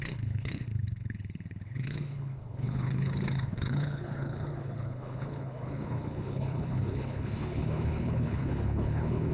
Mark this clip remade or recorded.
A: remade